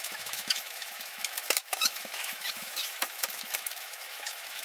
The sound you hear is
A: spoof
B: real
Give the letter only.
A